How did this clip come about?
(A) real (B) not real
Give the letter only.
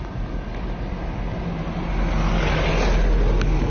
A